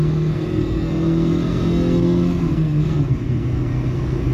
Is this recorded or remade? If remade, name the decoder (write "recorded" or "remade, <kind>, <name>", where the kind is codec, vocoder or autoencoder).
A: remade, codec, SNAC